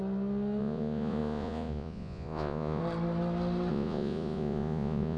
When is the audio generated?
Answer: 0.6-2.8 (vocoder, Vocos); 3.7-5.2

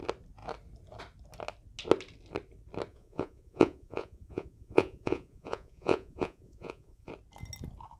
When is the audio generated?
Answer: 2.9-7.1 (vocoder, Vocos)

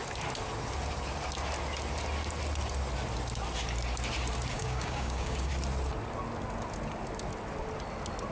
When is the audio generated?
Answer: 4.5-5.5 (codec, DAC)

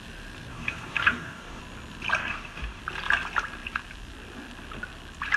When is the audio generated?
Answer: 0.5-1.6 (codec, DAC); 2.2-2.8